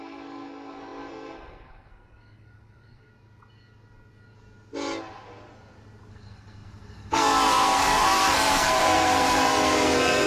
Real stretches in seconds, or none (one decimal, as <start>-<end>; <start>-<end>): 3.1-6.1